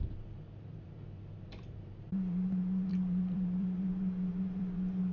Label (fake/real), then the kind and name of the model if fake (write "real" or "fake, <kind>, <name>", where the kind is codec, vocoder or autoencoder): fake, vocoder, BigVGAN v2